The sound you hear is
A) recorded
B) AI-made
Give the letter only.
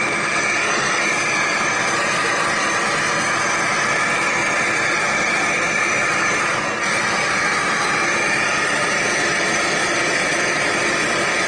A